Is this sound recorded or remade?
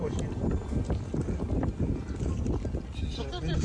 recorded